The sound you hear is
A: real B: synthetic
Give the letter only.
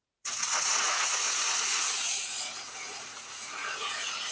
B